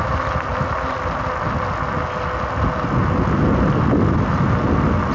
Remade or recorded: recorded